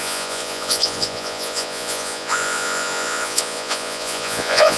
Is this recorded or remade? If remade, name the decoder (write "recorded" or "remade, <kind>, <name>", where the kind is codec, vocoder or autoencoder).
remade, vocoder, Vocos